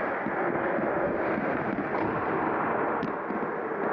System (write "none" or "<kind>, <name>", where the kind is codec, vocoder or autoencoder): none